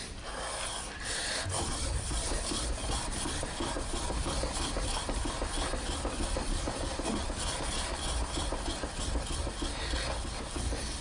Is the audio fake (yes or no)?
no